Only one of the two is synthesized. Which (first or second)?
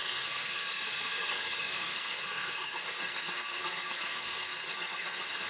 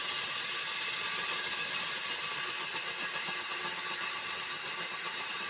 first